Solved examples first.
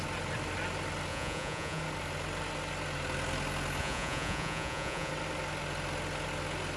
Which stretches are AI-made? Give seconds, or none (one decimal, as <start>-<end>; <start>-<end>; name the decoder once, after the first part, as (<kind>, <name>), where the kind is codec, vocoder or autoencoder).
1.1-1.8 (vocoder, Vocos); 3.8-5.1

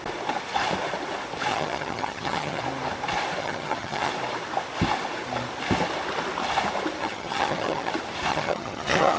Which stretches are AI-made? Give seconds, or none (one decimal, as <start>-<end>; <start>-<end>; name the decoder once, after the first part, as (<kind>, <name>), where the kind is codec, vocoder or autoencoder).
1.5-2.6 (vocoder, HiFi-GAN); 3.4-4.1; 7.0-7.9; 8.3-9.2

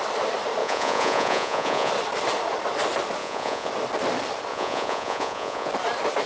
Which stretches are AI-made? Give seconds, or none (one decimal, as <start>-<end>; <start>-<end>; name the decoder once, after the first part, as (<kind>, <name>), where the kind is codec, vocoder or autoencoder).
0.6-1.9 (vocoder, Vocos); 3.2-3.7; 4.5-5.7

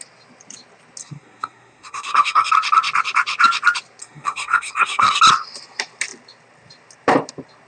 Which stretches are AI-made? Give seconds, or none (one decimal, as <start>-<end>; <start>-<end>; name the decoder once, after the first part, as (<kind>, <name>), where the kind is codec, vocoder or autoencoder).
1.0-2.5 (codec, SNAC); 4.0-5.2